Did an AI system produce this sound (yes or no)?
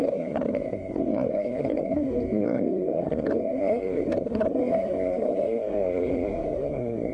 yes